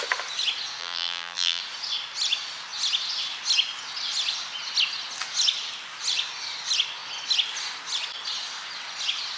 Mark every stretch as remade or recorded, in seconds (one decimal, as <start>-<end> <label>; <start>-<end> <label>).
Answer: 0.0-0.8 recorded; 0.8-1.6 remade; 1.6-9.4 recorded